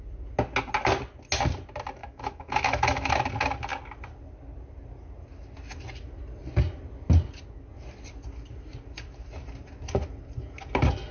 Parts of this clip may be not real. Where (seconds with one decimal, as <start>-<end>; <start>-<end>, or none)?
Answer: 2.0-3.1